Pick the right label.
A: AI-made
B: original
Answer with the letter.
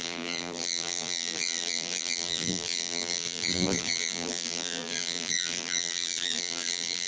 A